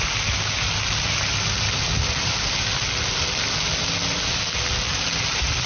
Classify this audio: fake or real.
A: real